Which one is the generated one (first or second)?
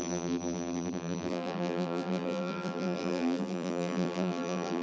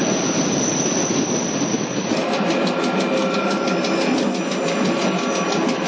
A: first